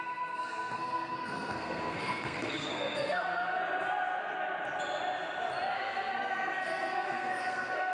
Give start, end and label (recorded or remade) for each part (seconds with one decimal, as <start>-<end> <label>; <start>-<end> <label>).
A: 0.0-3.6 remade; 3.6-5.7 recorded; 5.7-7.9 remade